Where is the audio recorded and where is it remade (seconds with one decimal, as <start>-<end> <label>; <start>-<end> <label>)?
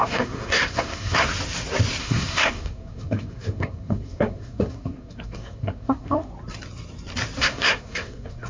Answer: 0.0-1.3 remade; 1.3-2.0 recorded; 2.0-6.3 remade; 6.3-7.4 recorded; 7.4-8.5 remade